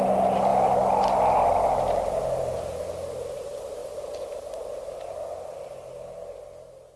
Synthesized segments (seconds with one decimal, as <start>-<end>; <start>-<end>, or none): 0.5-2.8